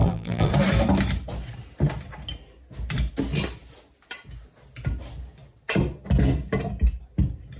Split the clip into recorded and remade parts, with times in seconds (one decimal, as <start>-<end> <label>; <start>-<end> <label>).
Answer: 0.0-0.5 remade; 0.5-7.6 recorded